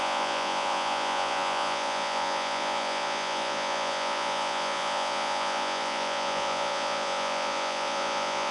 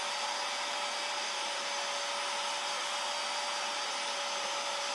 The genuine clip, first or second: second